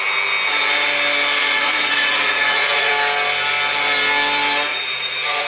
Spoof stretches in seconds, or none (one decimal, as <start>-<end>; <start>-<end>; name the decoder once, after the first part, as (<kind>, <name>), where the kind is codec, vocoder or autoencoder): 1.4-2.9 (vocoder, Vocos); 4.7-5.5